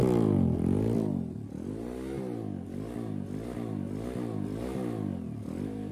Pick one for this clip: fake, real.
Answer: real